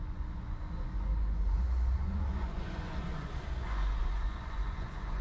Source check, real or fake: fake